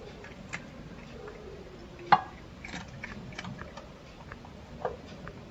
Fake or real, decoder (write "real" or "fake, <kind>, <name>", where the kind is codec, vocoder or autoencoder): real